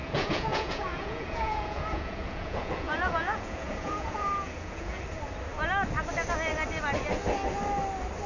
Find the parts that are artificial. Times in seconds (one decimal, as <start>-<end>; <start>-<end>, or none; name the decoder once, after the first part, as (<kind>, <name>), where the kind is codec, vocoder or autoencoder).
0.0-5.0 (vocoder, Vocos)